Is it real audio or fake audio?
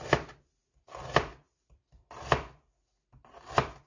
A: real